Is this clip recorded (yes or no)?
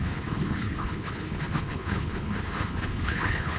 no